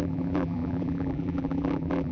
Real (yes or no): no